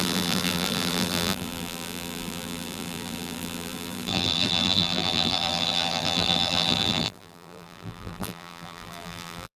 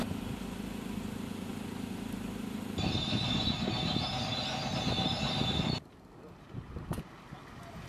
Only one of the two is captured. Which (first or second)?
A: second